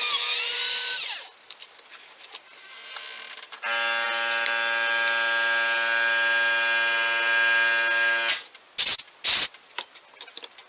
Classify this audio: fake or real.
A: real